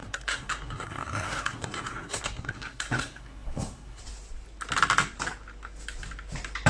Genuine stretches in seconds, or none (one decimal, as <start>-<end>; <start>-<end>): 4.0-6.7